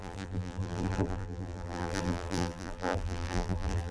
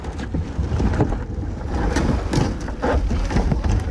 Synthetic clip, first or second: first